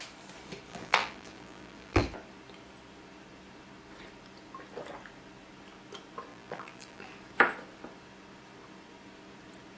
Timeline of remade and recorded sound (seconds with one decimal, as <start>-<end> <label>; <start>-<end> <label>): 0.0-0.7 recorded; 0.7-2.0 remade; 2.0-6.3 recorded; 6.3-7.1 remade; 7.1-9.8 recorded